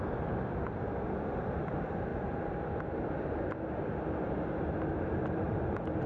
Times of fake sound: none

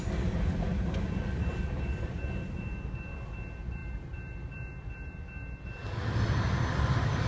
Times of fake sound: none

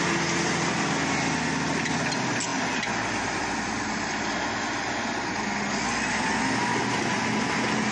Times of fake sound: none

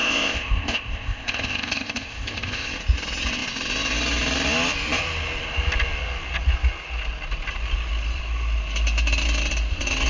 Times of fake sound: 0.0-2.7 (codec, ZipCodec)

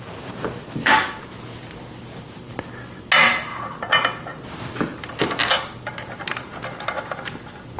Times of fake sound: none